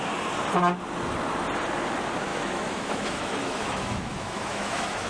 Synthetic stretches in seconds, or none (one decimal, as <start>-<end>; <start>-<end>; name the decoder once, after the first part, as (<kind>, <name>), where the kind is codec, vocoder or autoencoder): 2.3-5.1 (autoencoder, DAC-VAE)